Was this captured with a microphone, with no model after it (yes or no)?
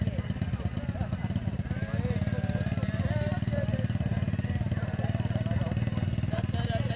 yes